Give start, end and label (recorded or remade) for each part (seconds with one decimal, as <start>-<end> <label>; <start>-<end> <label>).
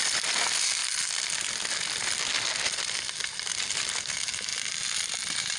0.0-5.6 recorded